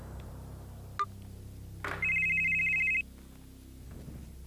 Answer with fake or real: real